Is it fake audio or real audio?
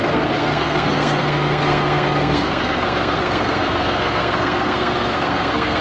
fake